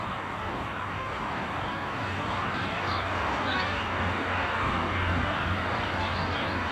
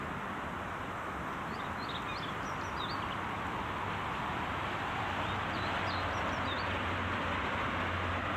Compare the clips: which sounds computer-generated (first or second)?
first